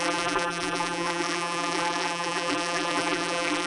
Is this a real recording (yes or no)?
no